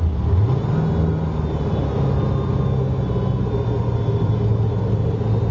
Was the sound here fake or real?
real